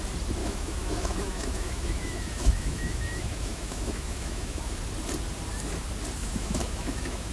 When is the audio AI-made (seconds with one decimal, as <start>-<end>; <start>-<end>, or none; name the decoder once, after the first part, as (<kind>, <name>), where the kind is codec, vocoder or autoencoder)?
0.4-4.8 (autoencoder, DAC-VAE); 6.2-7.3